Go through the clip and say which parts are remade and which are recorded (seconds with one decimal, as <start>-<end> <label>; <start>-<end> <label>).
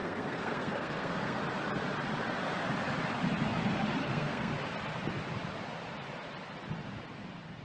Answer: 0.0-1.4 remade; 1.4-4.0 recorded; 4.0-4.5 remade; 4.5-7.6 recorded